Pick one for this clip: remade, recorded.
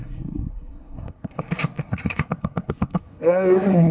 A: remade